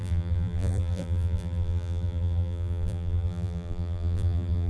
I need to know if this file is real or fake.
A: fake